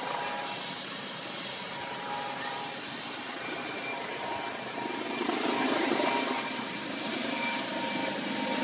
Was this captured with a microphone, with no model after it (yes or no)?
no